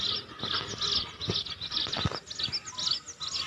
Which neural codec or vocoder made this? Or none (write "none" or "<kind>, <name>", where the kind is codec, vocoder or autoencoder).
none